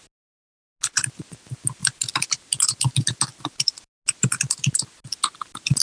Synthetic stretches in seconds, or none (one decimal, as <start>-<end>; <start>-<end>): none